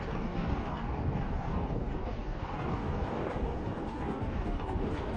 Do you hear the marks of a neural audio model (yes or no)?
yes